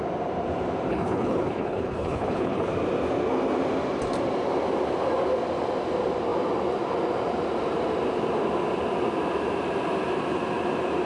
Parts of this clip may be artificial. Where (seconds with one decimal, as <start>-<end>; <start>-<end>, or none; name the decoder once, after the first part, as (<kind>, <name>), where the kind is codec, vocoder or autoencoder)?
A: 0.9-2.7 (codec, HILCodec)